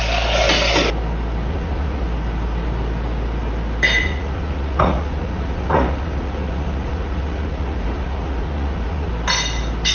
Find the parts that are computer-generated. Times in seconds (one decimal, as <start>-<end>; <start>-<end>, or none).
1.5-2.0; 4.0-9.1